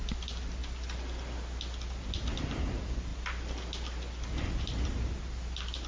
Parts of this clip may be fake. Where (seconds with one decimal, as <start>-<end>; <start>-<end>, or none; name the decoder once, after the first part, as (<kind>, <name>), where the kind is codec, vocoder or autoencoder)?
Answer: none